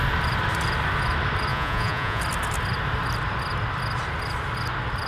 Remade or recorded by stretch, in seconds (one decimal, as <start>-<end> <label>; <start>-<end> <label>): 0.0-1.5 recorded; 1.5-2.2 remade; 2.2-5.1 recorded